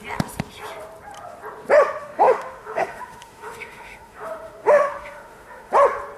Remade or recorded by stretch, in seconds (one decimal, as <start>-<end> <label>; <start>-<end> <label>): 0.0-2.0 recorded; 2.0-5.7 remade; 5.7-6.2 recorded

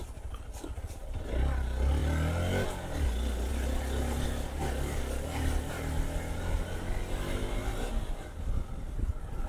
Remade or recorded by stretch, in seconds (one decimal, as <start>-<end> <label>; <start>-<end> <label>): 0.0-9.5 recorded

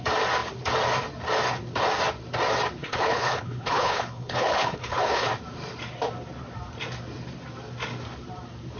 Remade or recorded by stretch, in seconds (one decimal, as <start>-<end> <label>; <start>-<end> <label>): 0.0-2.8 recorded; 2.8-5.3 remade; 5.3-8.8 recorded

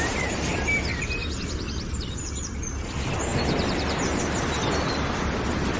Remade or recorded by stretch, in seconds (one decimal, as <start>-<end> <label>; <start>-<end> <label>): 0.0-1.2 recorded; 1.2-2.2 remade; 2.2-5.8 recorded